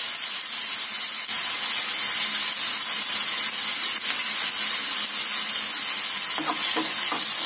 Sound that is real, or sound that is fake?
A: real